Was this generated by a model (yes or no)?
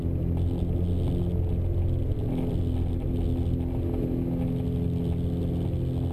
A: no